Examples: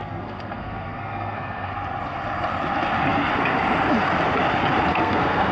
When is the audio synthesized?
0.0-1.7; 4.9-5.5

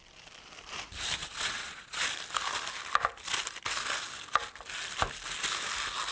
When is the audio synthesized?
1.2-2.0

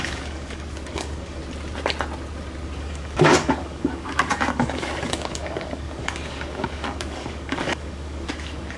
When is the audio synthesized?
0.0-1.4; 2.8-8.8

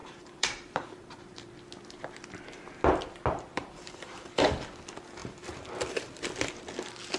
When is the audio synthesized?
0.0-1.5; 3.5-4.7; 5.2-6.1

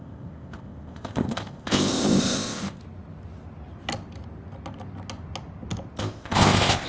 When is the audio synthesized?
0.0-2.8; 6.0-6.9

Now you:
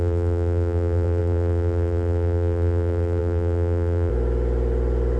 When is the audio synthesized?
0.0-4.1

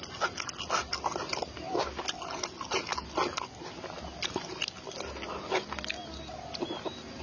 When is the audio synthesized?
none